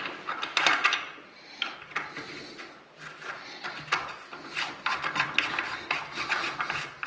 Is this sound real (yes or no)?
yes